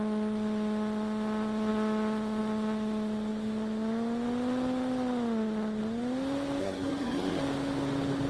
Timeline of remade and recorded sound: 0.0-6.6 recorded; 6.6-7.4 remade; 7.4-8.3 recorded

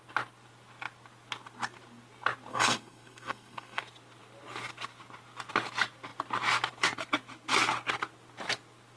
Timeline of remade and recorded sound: 0.0-2.5 recorded; 2.5-3.8 remade; 3.8-9.0 recorded

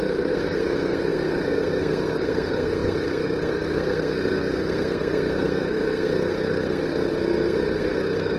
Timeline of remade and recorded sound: 0.0-8.4 remade

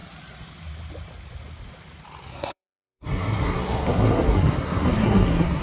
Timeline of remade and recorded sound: 0.0-2.3 recorded; 2.3-5.6 remade

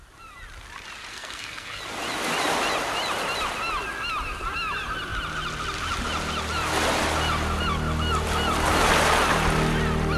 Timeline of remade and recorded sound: 0.0-1.1 recorded; 1.1-1.8 remade; 1.8-10.2 recorded

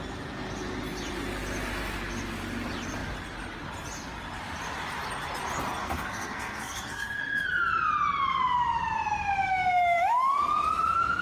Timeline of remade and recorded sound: 0.0-5.8 recorded; 5.8-7.5 remade; 7.5-11.2 recorded

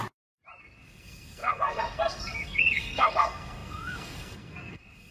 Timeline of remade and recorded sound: 0.0-0.6 recorded; 0.6-5.1 remade

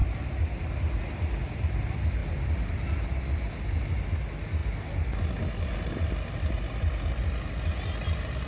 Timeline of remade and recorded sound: 0.0-8.5 recorded